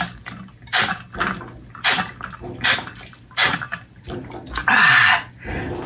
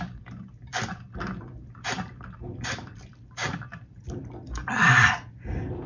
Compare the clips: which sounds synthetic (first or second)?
second